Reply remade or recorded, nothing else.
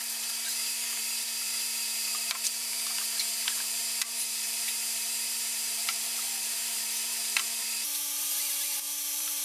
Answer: remade